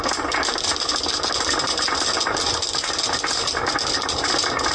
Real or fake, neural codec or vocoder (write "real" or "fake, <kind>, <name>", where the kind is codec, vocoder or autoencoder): real